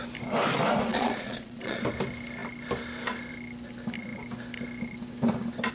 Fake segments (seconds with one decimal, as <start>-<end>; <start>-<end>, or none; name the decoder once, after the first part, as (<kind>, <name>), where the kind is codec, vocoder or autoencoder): 0.9-1.8 (vocoder, Vocos)